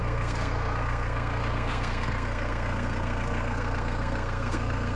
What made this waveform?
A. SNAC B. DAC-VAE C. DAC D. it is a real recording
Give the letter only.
A